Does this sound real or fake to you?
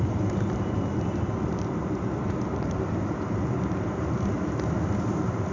fake